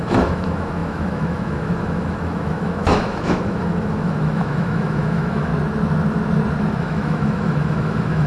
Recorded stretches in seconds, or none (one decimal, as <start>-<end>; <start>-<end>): 5.5-6.8